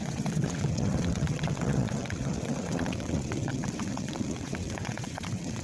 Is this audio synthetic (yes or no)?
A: yes